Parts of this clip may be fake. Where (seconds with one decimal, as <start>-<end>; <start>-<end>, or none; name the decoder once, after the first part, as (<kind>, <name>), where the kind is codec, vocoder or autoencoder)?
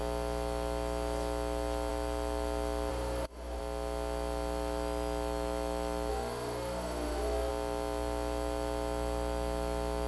2.9-3.6 (autoencoder, DAC-VAE); 6.1-7.5